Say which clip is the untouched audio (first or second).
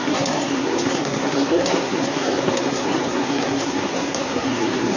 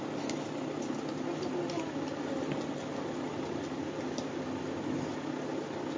second